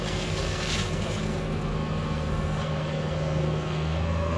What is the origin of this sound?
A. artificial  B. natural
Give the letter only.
A